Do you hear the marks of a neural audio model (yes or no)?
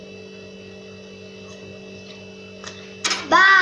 no